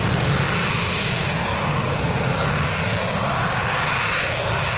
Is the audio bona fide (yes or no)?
yes